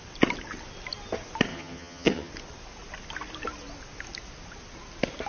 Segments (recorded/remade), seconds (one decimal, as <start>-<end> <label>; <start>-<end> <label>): 0.0-1.5 recorded; 1.5-2.3 remade; 2.3-5.3 recorded